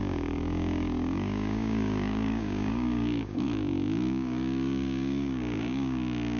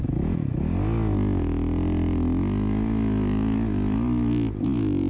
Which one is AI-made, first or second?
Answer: first